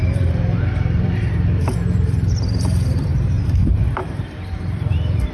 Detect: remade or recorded remade